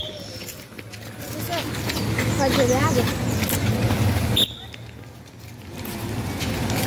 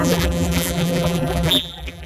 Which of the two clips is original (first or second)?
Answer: first